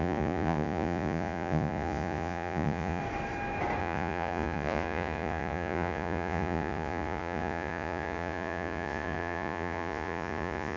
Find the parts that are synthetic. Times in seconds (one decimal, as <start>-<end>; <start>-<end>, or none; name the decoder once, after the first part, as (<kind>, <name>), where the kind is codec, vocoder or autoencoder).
0.0-3.0 (vocoder, Vocos); 3.8-10.8